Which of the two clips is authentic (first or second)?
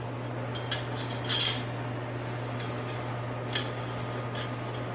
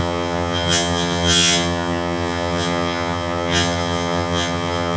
first